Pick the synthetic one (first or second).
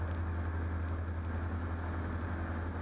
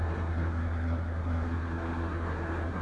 second